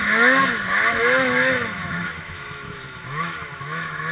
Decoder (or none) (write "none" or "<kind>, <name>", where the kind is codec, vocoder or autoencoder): autoencoder, DAC-VAE